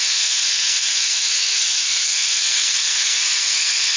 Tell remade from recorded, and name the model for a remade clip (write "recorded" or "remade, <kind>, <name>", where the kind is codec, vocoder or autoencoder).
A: remade, codec, SNAC